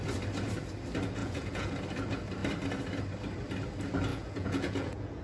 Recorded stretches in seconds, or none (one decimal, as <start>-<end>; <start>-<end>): 0.0-1.2; 1.7-4.1